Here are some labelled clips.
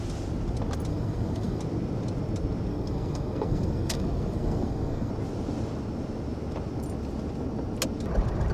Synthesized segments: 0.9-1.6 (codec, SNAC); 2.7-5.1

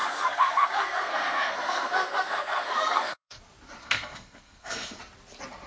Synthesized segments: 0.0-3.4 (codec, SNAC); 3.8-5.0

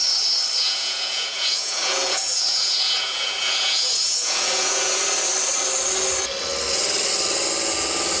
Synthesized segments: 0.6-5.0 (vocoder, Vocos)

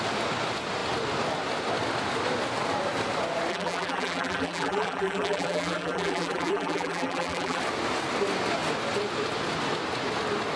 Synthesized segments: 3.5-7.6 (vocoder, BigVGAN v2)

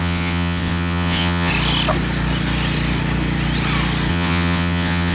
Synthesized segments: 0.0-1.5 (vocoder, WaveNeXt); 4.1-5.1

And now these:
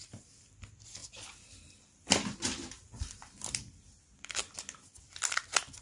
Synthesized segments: 1.0-4.5 (vocoder, BigVGAN v2)

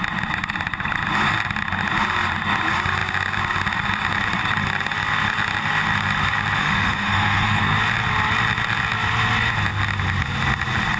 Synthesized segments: 6.6-7.6 (autoencoder, DAC-VAE)